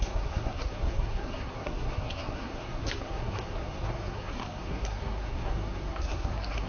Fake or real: fake